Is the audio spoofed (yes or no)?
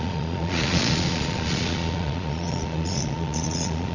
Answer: yes